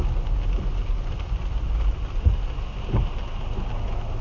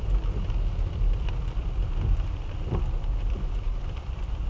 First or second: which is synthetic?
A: second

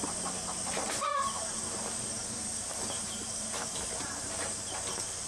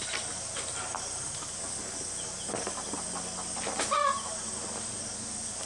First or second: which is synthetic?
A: first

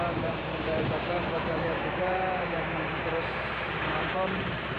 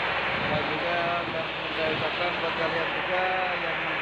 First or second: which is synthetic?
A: first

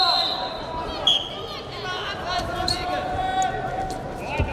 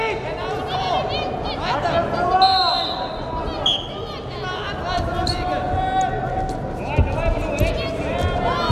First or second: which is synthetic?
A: first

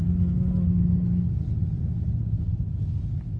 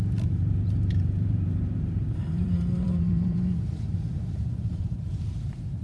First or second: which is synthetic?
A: second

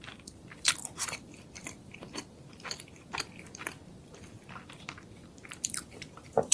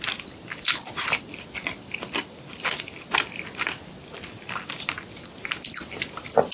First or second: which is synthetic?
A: first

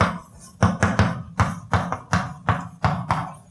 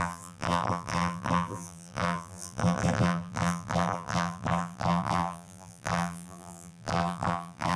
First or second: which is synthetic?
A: second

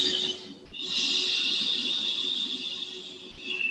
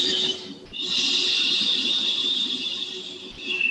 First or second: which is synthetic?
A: second